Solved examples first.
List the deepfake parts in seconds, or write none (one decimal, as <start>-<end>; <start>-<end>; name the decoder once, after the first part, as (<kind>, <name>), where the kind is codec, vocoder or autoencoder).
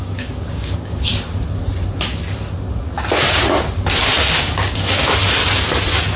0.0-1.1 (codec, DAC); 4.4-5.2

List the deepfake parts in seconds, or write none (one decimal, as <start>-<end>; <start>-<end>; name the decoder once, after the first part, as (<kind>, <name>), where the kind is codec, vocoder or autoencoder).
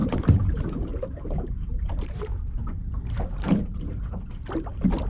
0.0-0.5 (vocoder, BigVGAN v2); 0.9-4.0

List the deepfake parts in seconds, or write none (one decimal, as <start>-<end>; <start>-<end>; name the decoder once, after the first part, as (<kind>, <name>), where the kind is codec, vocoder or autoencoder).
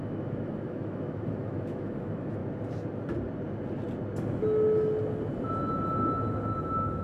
0.0-2.4 (autoencoder, DAC-VAE); 6.6-7.0